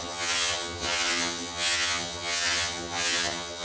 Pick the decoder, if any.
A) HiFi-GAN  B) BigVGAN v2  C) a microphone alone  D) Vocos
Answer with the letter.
A